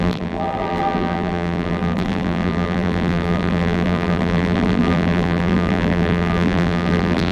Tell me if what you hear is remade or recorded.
remade